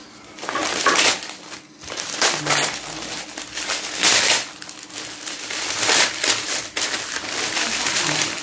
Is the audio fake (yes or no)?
no